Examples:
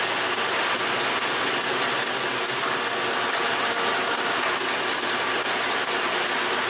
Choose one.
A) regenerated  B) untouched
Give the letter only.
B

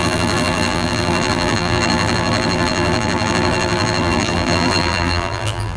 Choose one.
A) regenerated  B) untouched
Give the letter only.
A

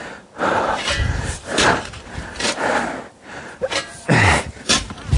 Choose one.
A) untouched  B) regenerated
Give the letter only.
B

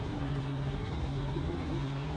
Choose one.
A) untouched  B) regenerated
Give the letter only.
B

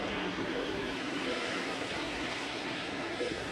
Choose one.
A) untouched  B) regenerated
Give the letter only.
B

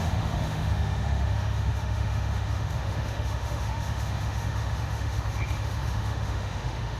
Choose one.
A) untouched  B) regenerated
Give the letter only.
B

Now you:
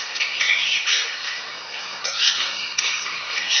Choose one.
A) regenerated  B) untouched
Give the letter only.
A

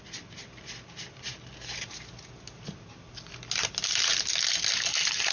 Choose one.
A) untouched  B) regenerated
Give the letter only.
A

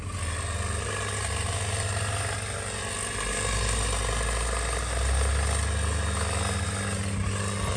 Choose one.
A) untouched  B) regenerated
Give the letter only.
A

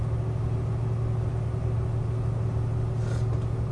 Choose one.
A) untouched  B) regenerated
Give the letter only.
A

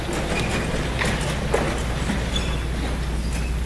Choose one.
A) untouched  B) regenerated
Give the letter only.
A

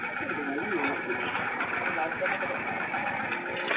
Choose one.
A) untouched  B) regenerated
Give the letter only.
A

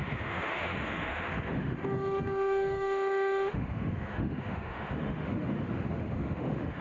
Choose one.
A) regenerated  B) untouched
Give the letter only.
A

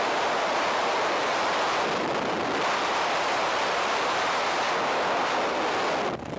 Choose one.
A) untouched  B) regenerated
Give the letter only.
A